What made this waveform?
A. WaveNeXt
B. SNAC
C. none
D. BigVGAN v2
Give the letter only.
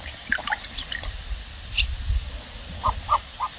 D